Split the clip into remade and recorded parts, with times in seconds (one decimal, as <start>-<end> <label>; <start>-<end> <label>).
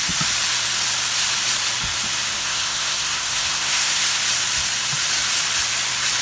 0.0-2.4 recorded; 2.4-4.2 remade; 4.2-6.2 recorded